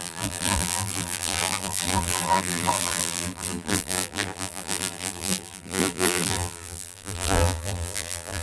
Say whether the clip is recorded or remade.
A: remade